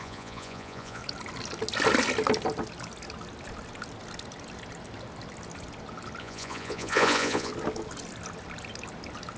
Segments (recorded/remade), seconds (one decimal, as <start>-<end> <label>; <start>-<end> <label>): 0.0-1.0 remade; 1.0-6.2 recorded; 6.2-7.5 remade; 7.5-9.4 recorded